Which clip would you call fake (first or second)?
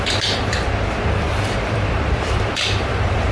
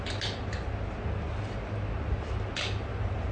first